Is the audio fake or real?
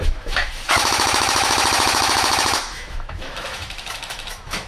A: fake